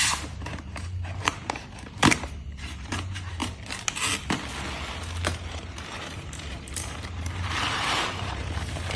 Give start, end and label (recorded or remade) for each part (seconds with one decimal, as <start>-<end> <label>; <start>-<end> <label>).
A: 0.0-3.4 remade; 3.4-4.9 recorded; 4.9-9.0 remade